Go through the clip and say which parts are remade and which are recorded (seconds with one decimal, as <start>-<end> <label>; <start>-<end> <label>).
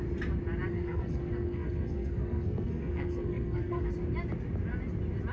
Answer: 0.0-0.7 recorded; 0.7-3.9 remade; 3.9-5.3 recorded